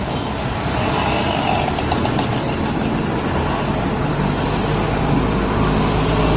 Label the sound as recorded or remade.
recorded